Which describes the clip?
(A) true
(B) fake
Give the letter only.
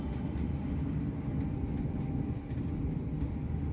A